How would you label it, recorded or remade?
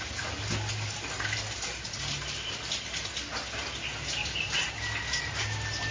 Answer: recorded